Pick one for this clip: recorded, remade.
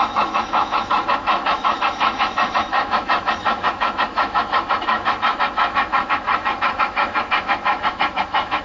remade